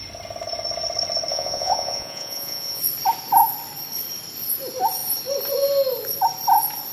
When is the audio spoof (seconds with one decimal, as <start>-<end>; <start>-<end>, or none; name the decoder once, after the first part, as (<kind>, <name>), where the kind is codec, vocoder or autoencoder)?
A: 1.3-2.8 (vocoder, Vocos)